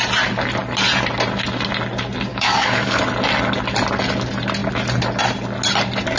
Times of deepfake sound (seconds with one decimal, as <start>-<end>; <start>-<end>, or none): 2.3-3.0